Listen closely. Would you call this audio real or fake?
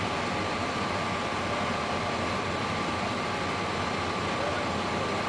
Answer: real